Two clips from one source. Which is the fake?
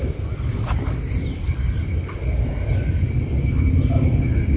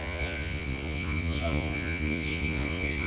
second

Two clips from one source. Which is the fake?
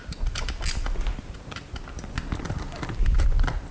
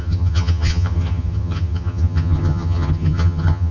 second